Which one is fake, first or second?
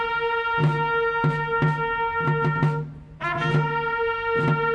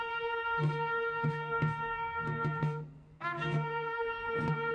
second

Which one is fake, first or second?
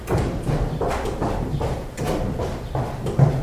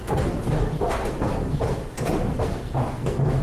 second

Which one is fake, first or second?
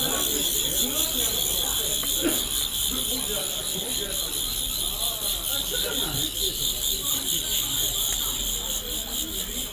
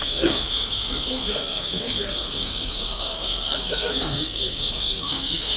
second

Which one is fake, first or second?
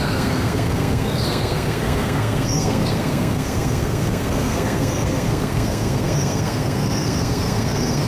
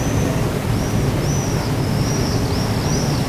first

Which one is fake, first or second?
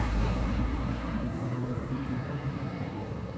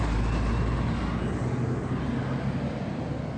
first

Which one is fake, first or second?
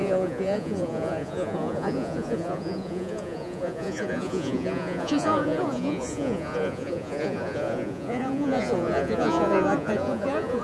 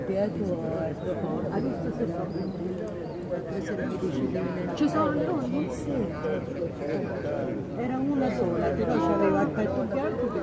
first